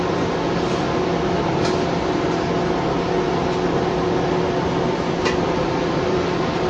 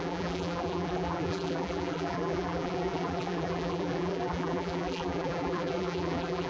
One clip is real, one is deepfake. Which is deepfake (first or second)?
second